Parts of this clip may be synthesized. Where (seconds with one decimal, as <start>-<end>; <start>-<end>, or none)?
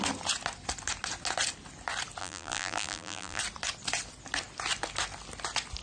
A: 2.2-3.4